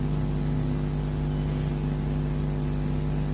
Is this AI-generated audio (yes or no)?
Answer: no